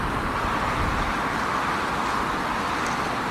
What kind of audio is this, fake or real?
real